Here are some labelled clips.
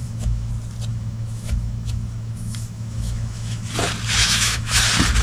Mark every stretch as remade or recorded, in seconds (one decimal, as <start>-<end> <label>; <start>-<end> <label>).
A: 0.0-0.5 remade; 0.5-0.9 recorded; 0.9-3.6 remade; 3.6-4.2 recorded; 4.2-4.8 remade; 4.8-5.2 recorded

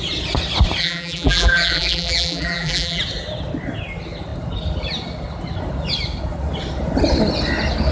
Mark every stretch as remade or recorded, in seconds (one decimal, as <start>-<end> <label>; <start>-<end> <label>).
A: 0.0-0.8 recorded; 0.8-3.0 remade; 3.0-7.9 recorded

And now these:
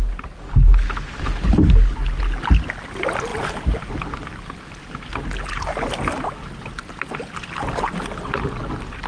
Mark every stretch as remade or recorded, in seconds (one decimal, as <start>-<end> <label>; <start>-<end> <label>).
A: 0.0-3.3 recorded; 3.3-3.9 remade; 3.9-9.1 recorded